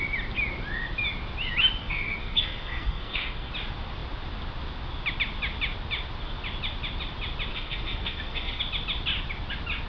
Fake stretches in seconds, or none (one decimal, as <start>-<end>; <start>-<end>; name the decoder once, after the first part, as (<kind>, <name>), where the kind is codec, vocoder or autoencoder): 1.8-3.5 (codec, SNAC); 7.5-8.6